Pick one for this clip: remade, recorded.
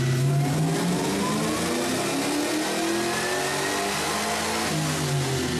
recorded